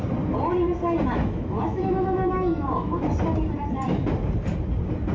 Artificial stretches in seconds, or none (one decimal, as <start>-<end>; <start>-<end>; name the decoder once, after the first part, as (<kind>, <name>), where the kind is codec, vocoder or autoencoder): 1.2-3.1 (autoencoder, DAC-VAE)